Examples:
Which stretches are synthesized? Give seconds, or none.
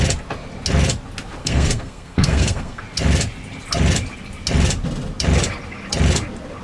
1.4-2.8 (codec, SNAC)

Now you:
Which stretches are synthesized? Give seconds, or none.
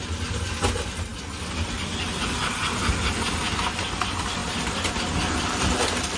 none